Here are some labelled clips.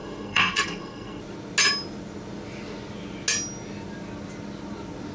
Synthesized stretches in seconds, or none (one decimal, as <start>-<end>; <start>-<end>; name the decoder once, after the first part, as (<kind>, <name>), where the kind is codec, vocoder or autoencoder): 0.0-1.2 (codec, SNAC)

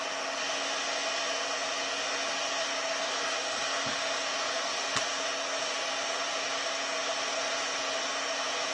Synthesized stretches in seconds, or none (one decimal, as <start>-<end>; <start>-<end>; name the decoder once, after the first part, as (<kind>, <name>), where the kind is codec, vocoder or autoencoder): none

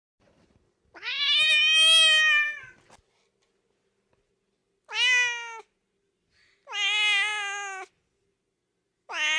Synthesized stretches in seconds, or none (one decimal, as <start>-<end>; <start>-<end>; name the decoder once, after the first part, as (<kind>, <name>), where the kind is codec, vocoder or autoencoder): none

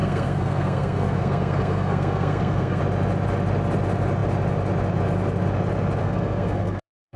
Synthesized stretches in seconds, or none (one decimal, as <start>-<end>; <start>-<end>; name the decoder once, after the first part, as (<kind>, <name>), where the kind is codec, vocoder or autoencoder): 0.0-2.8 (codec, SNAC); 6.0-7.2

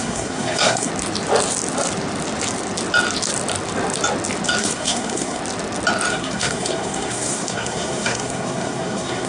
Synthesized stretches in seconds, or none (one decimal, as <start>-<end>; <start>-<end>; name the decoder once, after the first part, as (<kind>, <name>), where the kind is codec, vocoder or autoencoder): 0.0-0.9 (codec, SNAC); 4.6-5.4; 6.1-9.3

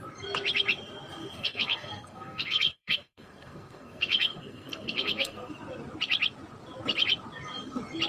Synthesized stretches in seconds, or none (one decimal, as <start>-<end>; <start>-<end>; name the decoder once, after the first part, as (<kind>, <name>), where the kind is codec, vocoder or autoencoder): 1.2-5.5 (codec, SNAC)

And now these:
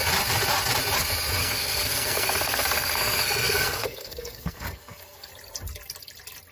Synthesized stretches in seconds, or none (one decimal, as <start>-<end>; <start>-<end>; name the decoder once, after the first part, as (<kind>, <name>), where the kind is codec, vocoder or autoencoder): 1.4-5.3 (codec, SNAC)

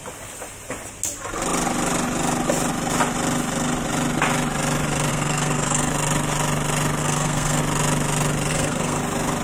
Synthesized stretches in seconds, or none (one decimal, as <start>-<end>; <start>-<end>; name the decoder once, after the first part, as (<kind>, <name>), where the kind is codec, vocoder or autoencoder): 5.1-5.9 (codec, SNAC); 7.0-7.6; 8.5-9.0